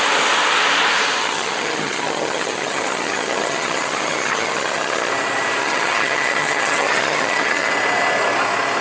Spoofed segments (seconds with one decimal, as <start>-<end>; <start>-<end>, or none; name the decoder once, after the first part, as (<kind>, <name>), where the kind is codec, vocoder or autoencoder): 1.2-5.1 (vocoder, HiFi-GAN); 5.6-7.7